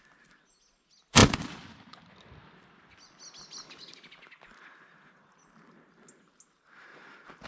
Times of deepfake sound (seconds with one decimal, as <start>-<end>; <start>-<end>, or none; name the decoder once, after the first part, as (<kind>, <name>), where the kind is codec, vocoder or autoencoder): none

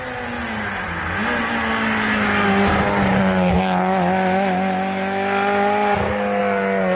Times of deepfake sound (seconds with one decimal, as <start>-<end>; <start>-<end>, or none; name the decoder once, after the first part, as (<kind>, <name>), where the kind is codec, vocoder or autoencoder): none

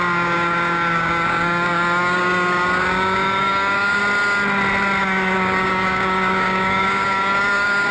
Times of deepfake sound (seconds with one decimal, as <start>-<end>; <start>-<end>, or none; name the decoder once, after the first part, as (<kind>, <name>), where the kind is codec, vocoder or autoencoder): 0.0-4.0 (codec, DAC); 5.0-7.9

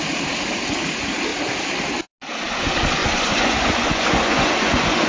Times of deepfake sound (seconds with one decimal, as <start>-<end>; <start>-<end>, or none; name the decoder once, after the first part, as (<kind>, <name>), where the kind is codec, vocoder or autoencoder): 3.0-5.1 (vocoder, Vocos)

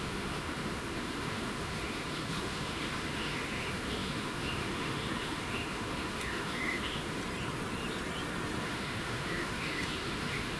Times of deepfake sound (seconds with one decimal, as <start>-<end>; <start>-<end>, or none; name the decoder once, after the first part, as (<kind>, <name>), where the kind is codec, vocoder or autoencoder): 0.0-7.2 (autoencoder, DAC-VAE); 8.6-10.6

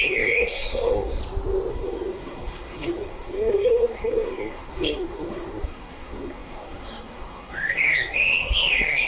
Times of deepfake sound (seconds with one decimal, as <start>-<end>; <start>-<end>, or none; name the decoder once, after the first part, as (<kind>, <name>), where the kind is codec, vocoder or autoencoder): 0.0-1.2 (codec, SNAC); 1.7-9.1

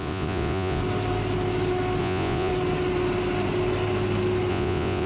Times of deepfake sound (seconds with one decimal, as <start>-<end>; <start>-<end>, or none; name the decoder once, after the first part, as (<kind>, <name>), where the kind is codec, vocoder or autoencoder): 0.0-0.8 (vocoder, Vocos); 2.0-2.5; 4.5-5.1